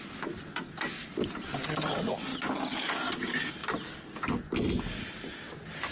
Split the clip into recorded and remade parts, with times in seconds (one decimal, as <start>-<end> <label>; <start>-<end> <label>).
0.0-5.9 recorded